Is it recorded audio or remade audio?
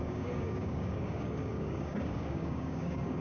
remade